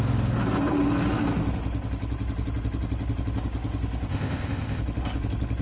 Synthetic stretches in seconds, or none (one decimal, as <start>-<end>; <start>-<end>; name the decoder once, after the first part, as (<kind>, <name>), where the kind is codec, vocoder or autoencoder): 4.1-4.8 (codec, ZipCodec)